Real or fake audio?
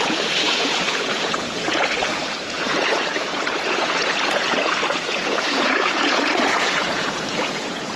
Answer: fake